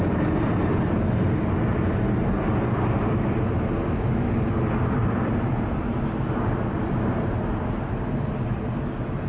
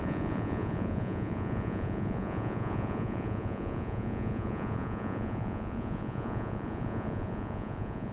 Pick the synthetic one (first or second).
second